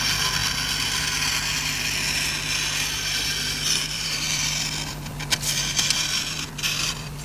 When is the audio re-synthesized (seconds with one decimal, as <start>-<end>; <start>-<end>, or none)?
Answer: none